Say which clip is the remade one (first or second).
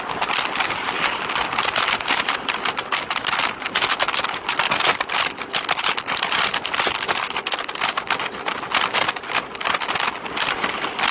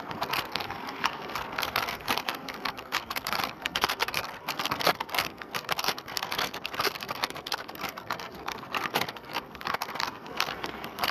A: second